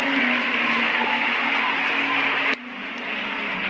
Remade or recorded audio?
recorded